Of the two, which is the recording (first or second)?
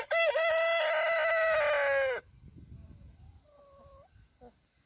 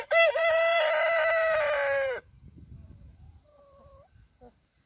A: first